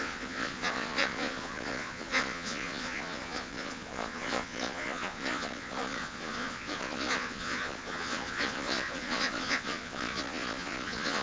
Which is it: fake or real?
fake